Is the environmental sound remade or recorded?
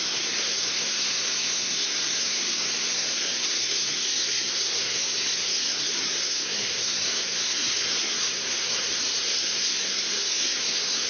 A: remade